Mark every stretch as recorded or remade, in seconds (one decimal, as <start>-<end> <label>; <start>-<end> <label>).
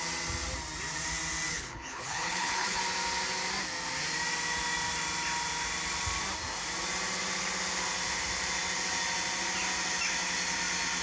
0.0-1.5 recorded; 1.5-2.8 remade; 2.8-11.0 recorded